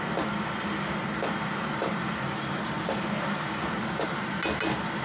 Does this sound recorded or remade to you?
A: recorded